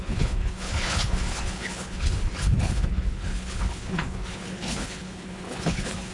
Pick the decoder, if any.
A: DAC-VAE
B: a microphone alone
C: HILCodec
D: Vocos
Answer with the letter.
C